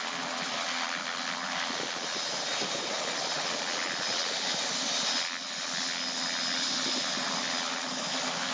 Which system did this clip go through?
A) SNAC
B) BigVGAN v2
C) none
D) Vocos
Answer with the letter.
C